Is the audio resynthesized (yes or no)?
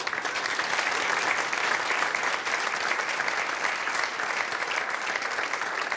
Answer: no